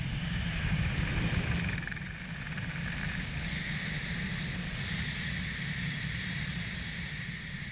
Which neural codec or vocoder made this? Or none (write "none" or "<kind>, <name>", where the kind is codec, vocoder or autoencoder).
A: none